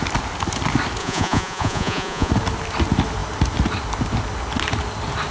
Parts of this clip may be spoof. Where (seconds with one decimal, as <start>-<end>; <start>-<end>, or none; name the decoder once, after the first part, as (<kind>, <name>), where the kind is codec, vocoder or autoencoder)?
1.0-2.3 (vocoder, Vocos)